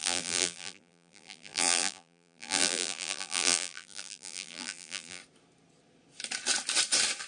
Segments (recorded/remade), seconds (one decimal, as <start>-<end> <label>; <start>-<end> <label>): 0.0-5.2 remade; 5.2-7.3 recorded